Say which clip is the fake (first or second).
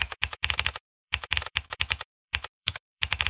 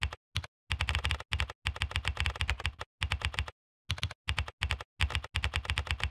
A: first